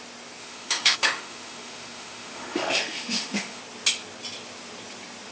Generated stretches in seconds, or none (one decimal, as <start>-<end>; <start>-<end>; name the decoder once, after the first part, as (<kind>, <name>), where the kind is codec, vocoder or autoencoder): 0.4-3.6 (autoencoder, DAC-VAE)